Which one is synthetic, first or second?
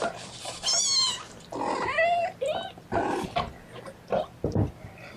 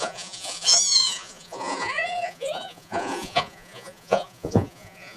second